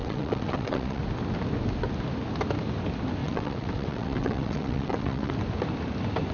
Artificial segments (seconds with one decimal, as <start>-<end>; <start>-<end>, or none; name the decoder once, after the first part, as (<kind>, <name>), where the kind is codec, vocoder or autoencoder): 0.0-1.0 (vocoder, WaveNeXt); 3.2-5.3